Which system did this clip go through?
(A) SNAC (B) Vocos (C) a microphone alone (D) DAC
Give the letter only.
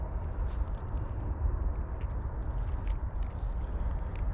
C